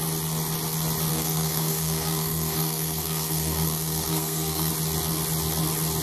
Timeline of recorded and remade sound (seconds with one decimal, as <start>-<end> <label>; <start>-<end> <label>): 0.0-1.1 recorded; 1.1-4.7 remade; 4.7-6.0 recorded